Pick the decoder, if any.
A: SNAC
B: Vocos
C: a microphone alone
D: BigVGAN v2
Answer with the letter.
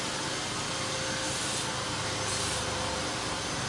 C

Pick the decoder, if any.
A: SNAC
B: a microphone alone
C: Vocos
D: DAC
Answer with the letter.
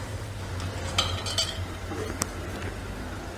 B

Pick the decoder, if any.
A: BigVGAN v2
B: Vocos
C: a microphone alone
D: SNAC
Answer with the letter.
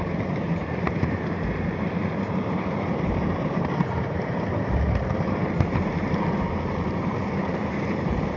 A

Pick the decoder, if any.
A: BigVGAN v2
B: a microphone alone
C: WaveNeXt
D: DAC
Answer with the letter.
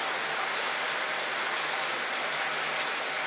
B